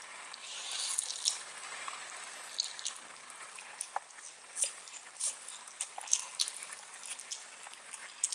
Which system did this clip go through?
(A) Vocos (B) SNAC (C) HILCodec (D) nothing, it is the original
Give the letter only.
D